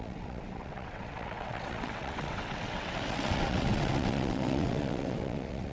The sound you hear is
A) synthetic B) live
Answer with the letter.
A